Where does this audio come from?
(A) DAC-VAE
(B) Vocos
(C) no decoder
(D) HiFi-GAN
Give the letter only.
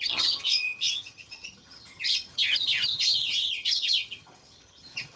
D